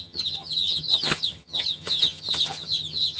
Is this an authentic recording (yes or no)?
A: no